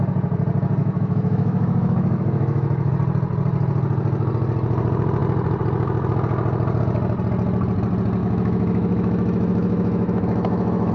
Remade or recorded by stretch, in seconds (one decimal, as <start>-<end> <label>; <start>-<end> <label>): 0.0-0.8 recorded; 0.8-2.9 remade; 2.9-8.2 recorded; 8.2-10.9 remade